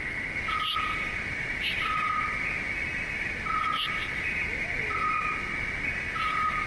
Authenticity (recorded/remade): recorded